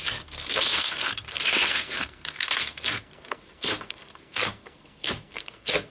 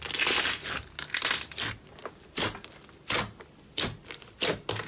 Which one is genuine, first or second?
second